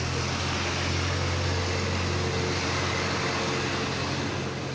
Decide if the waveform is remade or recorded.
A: recorded